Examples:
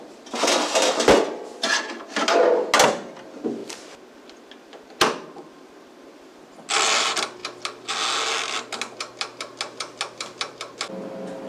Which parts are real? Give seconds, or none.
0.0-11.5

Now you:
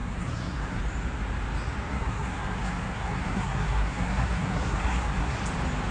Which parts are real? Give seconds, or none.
0.8-1.9; 5.4-5.9